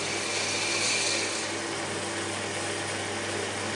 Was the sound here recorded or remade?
recorded